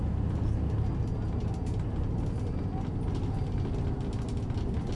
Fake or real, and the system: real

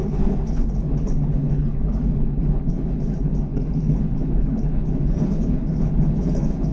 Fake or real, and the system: fake, codec, HILCodec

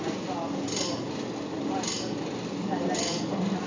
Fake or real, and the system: real